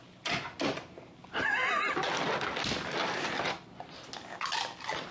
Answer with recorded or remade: recorded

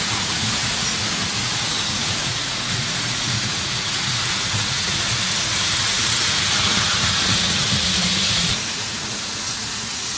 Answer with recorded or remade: remade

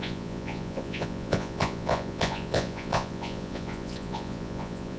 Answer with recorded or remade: remade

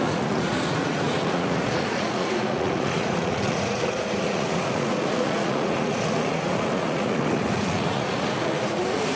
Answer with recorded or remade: remade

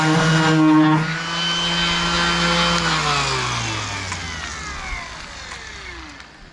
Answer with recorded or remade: recorded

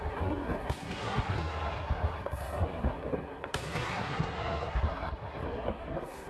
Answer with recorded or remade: remade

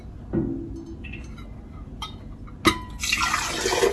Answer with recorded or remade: recorded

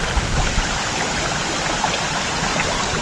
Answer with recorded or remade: remade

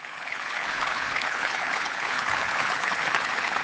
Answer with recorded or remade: remade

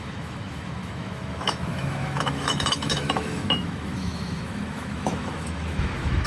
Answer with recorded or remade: remade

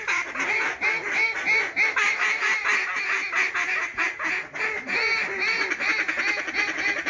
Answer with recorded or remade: recorded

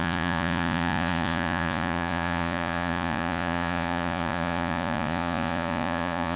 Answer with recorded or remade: remade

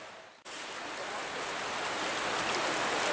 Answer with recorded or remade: recorded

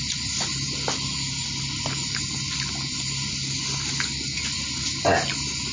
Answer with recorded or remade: recorded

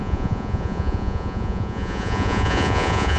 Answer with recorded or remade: remade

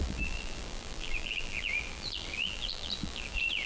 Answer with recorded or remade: remade